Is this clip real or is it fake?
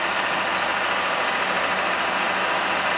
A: real